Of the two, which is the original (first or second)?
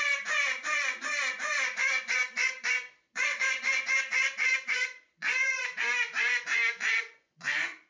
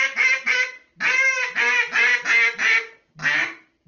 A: second